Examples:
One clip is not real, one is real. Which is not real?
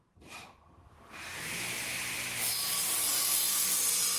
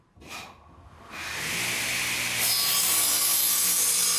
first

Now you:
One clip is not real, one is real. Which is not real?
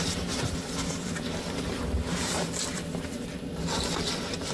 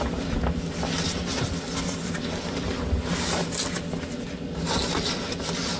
first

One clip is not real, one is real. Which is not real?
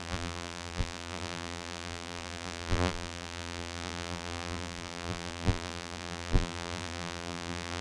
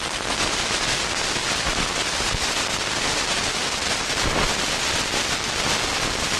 first